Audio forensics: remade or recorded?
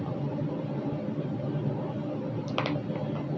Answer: recorded